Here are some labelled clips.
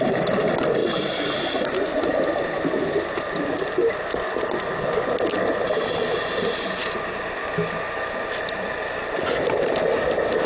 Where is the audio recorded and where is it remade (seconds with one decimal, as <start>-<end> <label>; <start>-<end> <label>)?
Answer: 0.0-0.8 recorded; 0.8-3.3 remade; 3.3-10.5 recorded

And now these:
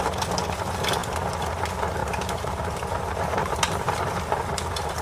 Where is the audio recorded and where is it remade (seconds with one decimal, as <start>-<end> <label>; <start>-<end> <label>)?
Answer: 0.0-2.0 recorded; 2.0-4.2 remade; 4.2-5.0 recorded

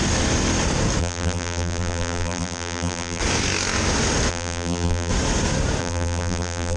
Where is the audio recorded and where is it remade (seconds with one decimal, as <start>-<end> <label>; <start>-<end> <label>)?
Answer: 0.0-1.0 recorded; 1.0-3.2 remade; 3.2-4.3 recorded; 4.3-5.1 remade; 5.1-5.8 recorded; 5.8-6.8 remade